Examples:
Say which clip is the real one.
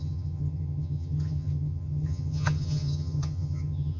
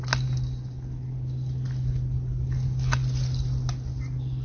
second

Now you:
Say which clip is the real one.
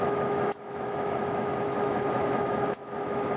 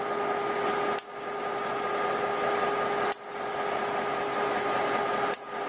second